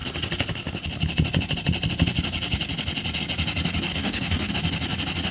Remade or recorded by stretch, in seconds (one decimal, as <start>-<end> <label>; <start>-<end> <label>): 0.0-3.9 recorded; 3.9-4.5 remade; 4.5-5.3 recorded